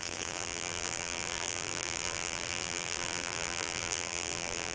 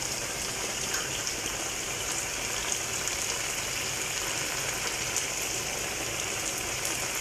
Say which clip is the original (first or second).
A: second